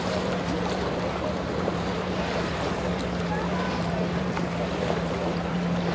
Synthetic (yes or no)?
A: yes